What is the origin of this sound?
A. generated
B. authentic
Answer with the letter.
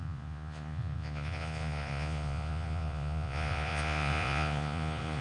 A